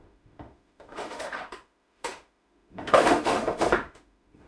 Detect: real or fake fake